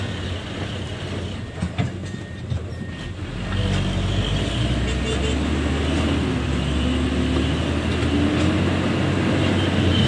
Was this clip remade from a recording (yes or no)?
no